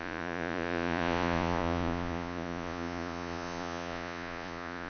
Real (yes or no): no